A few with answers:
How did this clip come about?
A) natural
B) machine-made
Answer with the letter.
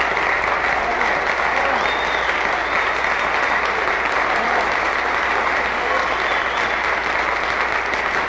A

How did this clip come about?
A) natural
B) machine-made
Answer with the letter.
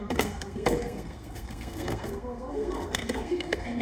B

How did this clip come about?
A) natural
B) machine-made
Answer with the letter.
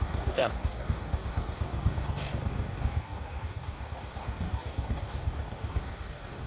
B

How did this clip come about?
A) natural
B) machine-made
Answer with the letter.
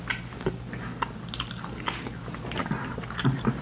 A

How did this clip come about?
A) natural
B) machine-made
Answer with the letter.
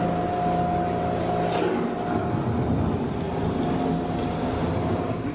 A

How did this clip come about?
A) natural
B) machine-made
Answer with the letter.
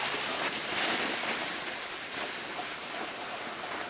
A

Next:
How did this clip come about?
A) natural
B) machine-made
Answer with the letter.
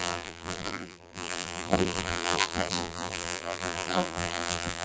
B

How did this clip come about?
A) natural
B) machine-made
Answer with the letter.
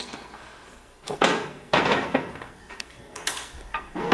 B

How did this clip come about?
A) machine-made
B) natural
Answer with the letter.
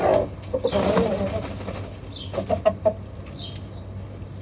B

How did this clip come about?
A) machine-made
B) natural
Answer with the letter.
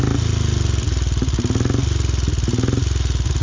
B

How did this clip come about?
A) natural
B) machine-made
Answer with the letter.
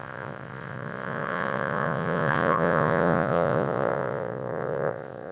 B